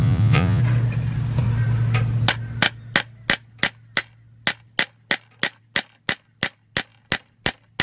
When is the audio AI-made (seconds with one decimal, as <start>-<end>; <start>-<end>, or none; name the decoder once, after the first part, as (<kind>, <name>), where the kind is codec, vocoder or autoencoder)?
0.0-0.6 (vocoder, Vocos)